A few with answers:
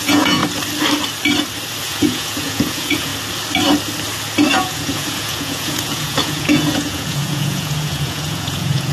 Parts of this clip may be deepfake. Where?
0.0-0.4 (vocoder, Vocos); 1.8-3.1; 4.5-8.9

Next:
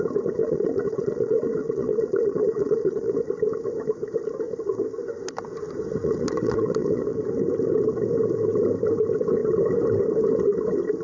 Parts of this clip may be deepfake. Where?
0.4-3.1 (vocoder, Vocos); 6.0-7.2

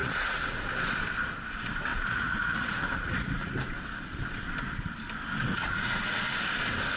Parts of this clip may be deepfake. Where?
0.0-0.6 (vocoder, Vocos); 1.9-3.5; 5.5-6.4

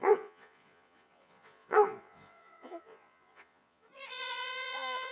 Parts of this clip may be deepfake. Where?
0.0-5.1 (vocoder, Vocos)